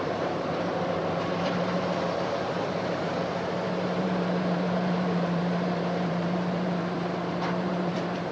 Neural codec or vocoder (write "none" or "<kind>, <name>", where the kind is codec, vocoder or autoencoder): vocoder, BigVGAN v2